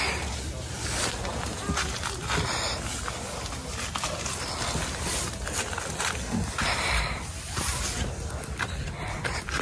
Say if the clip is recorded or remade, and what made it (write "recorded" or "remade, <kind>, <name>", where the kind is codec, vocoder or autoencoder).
recorded